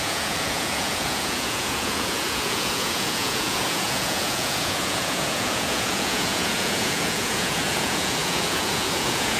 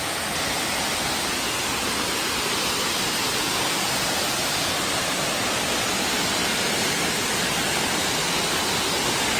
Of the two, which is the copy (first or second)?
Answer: first